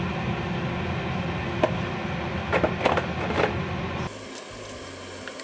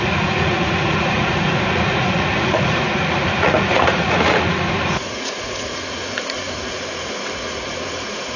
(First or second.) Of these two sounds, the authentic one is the first